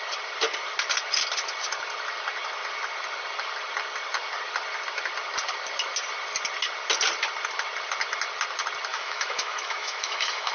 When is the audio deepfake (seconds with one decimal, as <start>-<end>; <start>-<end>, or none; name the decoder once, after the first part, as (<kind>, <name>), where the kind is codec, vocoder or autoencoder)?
8.9-10.5 (autoencoder, DAC-VAE)